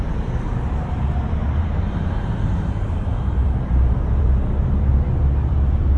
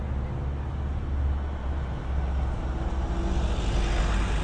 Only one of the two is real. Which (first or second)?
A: second